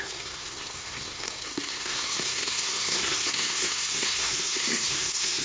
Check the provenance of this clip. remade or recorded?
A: remade